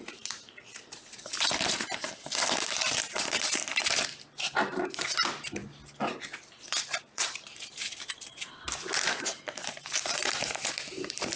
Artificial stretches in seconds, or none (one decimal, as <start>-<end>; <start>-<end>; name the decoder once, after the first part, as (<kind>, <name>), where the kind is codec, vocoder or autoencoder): 0.0-5.6 (vocoder, BigVGAN v2); 7.0-11.4